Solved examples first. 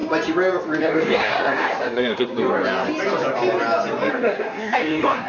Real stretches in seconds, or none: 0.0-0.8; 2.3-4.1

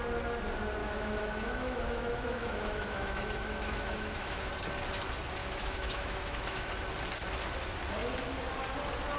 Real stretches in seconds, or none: 0.0-0.8; 4.5-5.4; 6.7-9.2

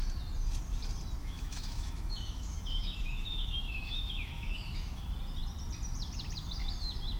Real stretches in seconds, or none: 0.0-1.2; 5.0-7.2

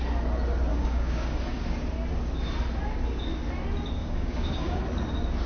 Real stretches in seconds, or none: 0.0-0.7; 1.4-4.0; 4.8-5.5

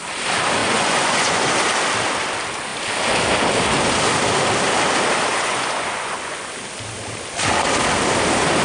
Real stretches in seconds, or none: 0.0-0.6; 1.4-5.3; 6.5-8.6

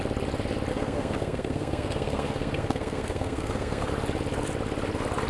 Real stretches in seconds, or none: 0.0-0.7; 3.9-5.3

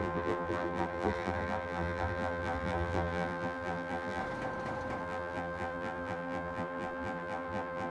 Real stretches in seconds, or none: 4.2-5.0

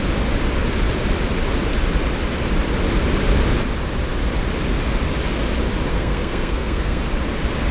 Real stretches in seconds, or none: 0.0-5.9; 7.0-7.7